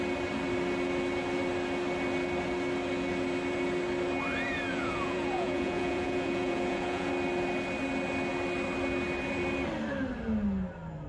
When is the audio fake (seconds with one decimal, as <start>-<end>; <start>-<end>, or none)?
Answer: 4.7-7.1